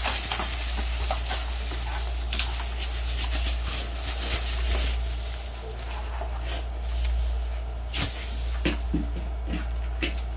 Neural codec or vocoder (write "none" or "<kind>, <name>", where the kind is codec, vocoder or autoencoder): none